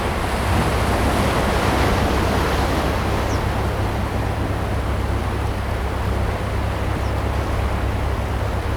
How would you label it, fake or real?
real